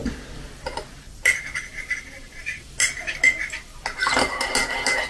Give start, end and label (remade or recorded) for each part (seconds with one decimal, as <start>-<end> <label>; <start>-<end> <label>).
0.0-5.1 recorded